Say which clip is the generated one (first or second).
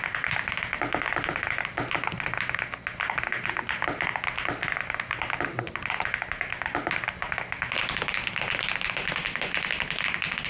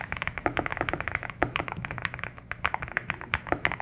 second